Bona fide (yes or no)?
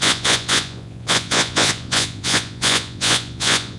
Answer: no